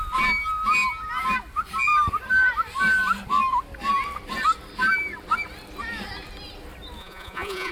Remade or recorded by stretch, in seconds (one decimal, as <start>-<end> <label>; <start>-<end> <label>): 0.0-7.0 recorded; 7.0-7.7 remade